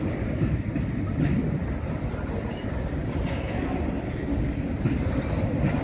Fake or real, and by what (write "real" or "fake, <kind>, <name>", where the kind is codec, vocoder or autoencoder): real